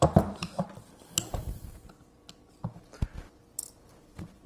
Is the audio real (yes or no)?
yes